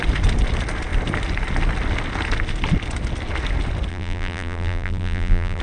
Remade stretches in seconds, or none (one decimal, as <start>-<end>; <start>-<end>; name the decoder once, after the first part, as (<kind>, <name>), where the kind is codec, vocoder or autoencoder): 3.9-5.6 (vocoder, BigVGAN v2)